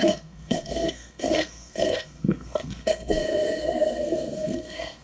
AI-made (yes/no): yes